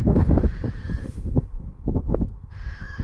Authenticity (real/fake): fake